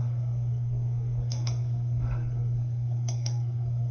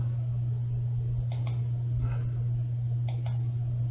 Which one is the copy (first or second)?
first